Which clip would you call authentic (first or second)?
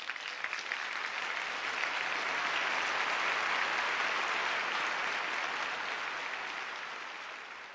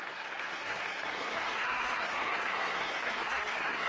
first